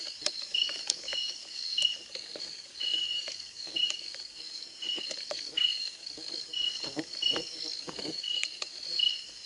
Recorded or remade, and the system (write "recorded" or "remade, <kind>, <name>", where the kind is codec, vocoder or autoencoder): remade, codec, DAC